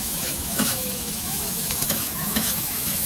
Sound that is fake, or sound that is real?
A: fake